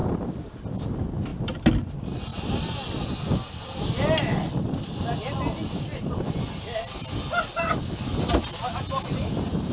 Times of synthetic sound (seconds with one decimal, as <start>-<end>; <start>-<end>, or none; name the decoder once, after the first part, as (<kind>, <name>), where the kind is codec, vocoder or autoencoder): none